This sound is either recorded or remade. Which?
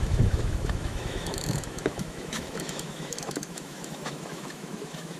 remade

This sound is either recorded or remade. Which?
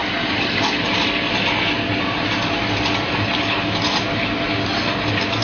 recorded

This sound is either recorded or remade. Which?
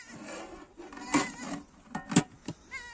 recorded